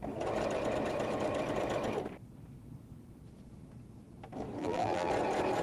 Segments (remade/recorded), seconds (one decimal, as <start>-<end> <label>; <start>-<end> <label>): 0.0-4.6 recorded; 4.6-5.1 remade; 5.1-5.6 recorded